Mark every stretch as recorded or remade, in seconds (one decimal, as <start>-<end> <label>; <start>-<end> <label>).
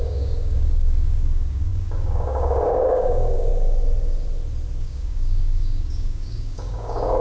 0.0-3.5 remade; 3.5-4.8 recorded; 4.8-7.2 remade